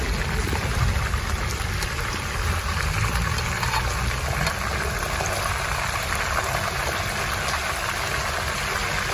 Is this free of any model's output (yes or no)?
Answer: yes